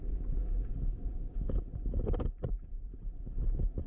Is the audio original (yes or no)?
yes